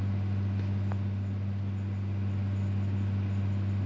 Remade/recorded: recorded